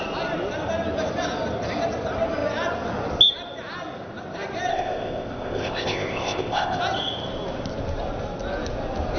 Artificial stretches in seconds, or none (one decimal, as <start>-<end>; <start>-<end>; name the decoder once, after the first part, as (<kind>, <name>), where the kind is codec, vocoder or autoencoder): 4.7-6.8 (codec, ZipCodec)